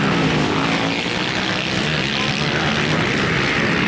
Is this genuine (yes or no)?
yes